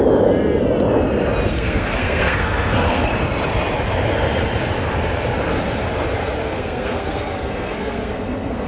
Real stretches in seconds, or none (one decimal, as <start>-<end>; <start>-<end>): 0.0-1.5; 3.1-6.4